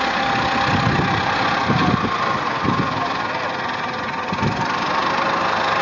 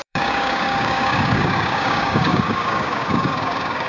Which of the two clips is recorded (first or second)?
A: first